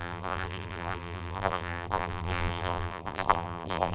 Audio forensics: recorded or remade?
remade